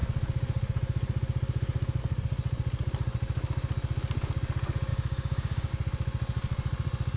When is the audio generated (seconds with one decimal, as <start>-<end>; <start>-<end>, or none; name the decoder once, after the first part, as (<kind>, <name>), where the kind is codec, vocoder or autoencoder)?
4.9-5.7 (codec, DAC)